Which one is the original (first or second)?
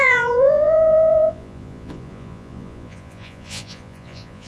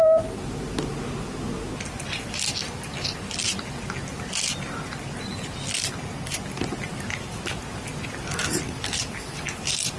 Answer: second